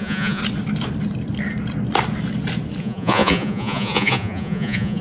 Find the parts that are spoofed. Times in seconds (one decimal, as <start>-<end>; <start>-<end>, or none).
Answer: 0.0-0.4; 2.8-5.0